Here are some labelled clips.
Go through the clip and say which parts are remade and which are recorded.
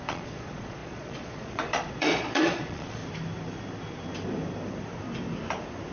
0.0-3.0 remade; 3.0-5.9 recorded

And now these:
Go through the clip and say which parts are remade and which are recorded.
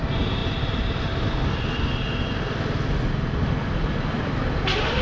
0.0-5.0 recorded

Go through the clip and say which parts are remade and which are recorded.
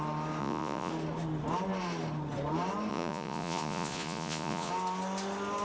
0.0-0.4 recorded; 0.4-0.9 remade; 0.9-2.9 recorded; 2.9-4.7 remade; 4.7-5.6 recorded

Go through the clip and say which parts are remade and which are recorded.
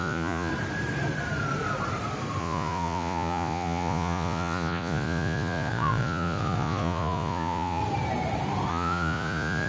0.0-0.5 remade; 0.5-2.4 recorded; 2.4-7.8 remade; 7.8-8.7 recorded; 8.7-9.7 remade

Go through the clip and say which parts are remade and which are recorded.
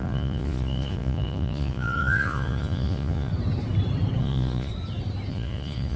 0.0-3.3 remade; 3.3-4.2 recorded; 4.2-4.7 remade; 4.7-5.3 recorded; 5.3-6.0 remade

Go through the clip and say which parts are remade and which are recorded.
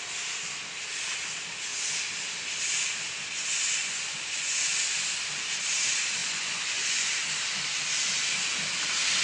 0.0-3.8 recorded; 3.8-4.6 remade; 4.6-6.2 recorded; 6.2-7.1 remade; 7.1-9.2 recorded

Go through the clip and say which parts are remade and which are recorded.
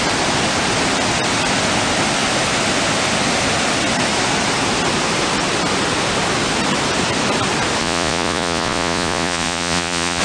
0.0-7.8 recorded; 7.8-10.2 remade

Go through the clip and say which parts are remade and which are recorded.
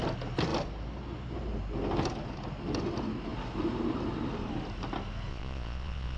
0.0-5.3 recorded; 5.3-6.2 remade